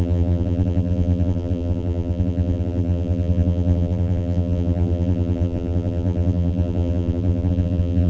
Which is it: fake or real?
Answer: fake